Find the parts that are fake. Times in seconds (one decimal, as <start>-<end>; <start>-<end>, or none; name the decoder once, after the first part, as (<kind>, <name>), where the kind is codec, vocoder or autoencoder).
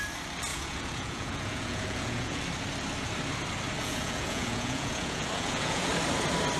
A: 0.5-2.4 (vocoder, Vocos); 3.8-5.9